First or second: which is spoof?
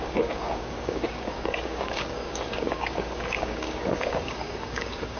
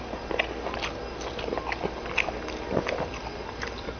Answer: first